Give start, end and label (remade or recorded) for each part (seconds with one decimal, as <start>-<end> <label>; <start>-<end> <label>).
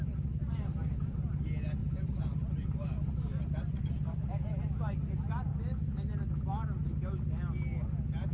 0.0-0.4 recorded; 0.4-1.3 remade; 1.3-1.8 recorded; 1.8-4.6 remade; 4.6-8.3 recorded